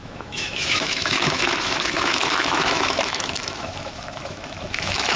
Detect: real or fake fake